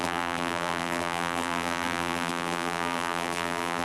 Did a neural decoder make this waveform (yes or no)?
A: yes